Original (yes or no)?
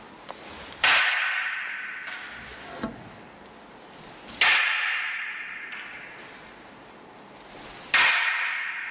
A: yes